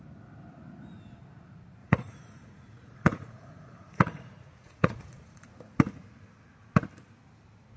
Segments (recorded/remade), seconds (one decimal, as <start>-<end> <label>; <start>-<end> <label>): 0.0-1.8 recorded; 1.8-5.5 remade; 5.5-7.8 recorded